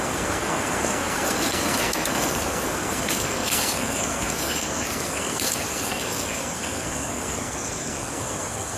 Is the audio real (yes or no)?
no